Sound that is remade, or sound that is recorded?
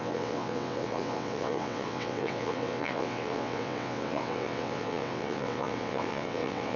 remade